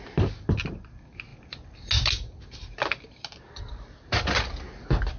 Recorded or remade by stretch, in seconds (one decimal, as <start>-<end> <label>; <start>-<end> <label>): 0.0-5.2 recorded